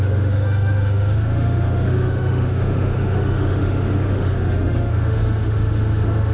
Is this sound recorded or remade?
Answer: remade